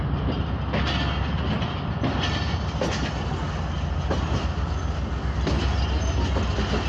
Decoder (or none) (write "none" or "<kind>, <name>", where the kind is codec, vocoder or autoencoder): none